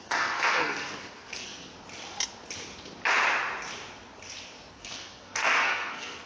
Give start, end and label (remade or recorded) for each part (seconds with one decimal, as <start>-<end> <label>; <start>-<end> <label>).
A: 0.0-1.7 remade; 1.7-4.7 recorded; 4.7-6.3 remade